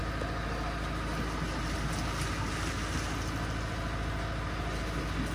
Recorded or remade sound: recorded